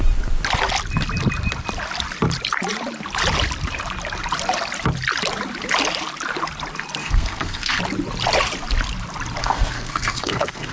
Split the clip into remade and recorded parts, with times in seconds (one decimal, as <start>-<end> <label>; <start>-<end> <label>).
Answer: 0.0-7.0 recorded; 7.0-7.8 remade; 7.8-9.4 recorded; 9.4-10.7 remade